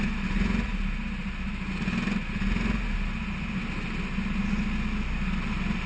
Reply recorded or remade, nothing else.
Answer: recorded